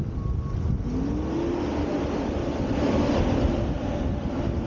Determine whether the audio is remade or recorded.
recorded